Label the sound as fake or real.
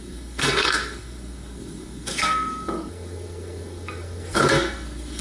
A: fake